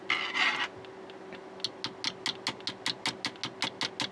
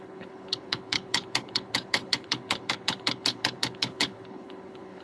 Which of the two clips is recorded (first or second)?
first